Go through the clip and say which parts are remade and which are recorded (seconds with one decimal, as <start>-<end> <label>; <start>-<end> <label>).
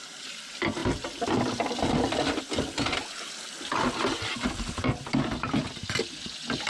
0.0-6.7 recorded